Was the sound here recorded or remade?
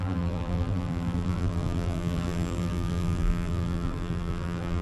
remade